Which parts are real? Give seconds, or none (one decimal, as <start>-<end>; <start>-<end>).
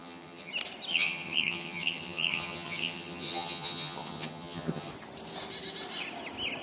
0.5-0.9; 4.9-6.6